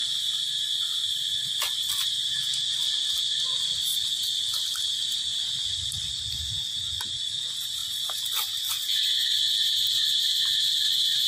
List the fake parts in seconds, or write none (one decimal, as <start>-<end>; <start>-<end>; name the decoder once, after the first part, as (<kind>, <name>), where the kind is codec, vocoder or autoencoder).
0.0-2.2 (vocoder, BigVGAN v2)